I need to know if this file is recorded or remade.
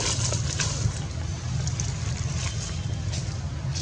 recorded